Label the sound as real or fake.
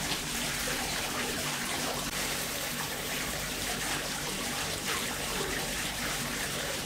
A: fake